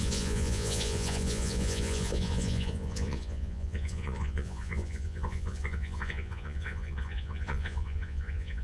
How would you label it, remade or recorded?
remade